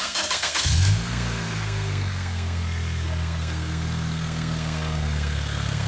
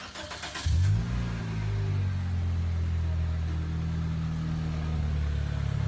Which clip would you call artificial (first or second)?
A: first